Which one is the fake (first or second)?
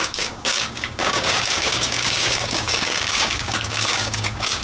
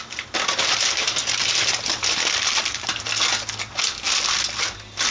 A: first